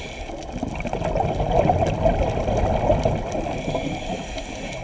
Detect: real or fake real